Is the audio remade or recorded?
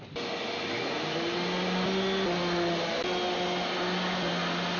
recorded